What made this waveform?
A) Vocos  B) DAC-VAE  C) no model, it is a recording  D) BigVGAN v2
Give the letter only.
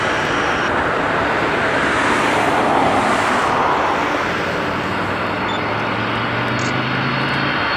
C